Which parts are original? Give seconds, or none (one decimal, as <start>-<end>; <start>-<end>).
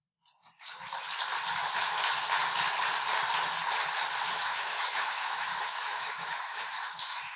0.0-4.4